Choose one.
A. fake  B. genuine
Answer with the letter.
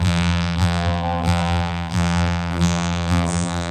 A